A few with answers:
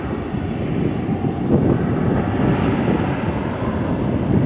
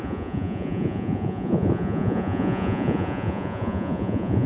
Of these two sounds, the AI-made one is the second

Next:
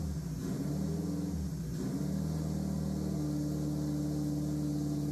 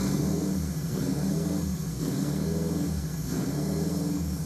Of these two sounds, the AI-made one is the second